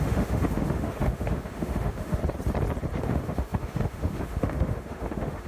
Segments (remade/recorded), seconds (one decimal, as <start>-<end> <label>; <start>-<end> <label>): 0.0-2.2 remade; 2.2-3.0 recorded; 3.0-5.5 remade